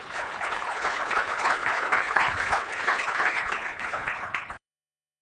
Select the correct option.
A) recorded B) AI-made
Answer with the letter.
B